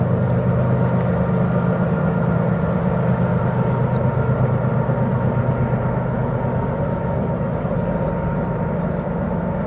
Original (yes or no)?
yes